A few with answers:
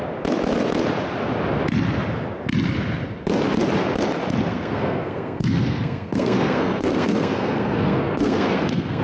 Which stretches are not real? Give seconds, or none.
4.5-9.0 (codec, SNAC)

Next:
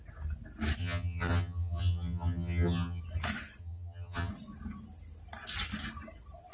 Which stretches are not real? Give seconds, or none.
0.8-3.0 (vocoder, HiFi-GAN); 3.6-4.3

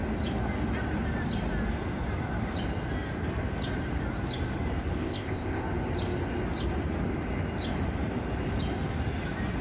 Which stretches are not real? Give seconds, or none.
5.0-5.6 (codec, ZipCodec)

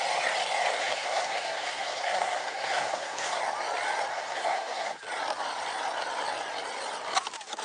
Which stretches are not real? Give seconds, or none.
0.8-3.4 (codec, SNAC); 4.1-5.0

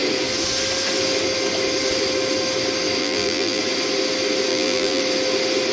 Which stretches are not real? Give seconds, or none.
3.0-3.6 (vocoder, BigVGAN v2); 4.5-5.0

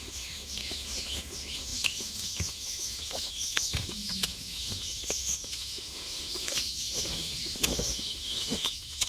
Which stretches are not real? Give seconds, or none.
0.0-9.1 (autoencoder, DAC-VAE)

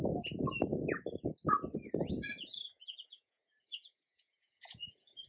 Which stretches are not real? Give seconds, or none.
0.0-0.7 (vocoder, Vocos); 2.1-5.3

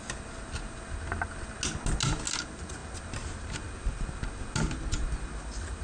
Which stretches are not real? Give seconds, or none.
none